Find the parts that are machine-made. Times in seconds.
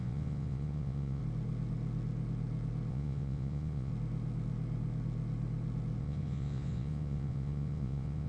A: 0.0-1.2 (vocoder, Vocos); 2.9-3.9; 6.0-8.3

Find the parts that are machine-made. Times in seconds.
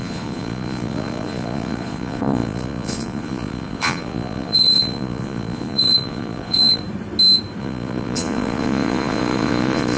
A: 0.0-6.8 (vocoder, Vocos); 7.6-10.0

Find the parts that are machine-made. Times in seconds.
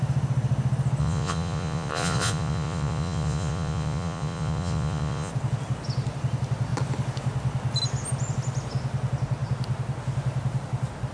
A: 1.0-5.3 (vocoder, Vocos)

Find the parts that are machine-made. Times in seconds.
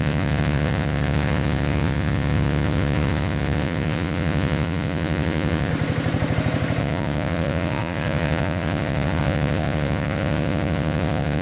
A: 0.0-5.7 (vocoder, Vocos); 6.8-11.4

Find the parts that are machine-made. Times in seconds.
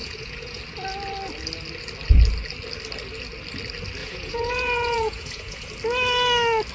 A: 0.0-0.6 (vocoder, Vocos); 4.0-5.7